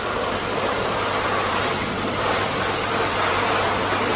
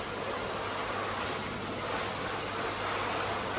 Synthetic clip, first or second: first